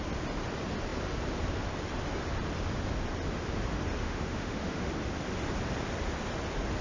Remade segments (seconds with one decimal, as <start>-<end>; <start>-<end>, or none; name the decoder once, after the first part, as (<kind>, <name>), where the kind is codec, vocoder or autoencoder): 4.0-4.9 (autoencoder, DAC-VAE)